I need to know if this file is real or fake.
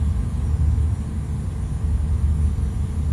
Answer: real